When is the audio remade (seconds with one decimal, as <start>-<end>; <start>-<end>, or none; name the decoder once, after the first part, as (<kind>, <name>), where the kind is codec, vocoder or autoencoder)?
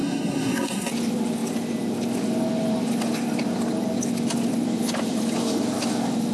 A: 0.0-0.9 (codec, SNAC)